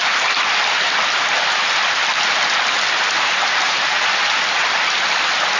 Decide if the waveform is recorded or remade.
recorded